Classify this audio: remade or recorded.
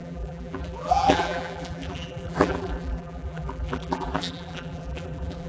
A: remade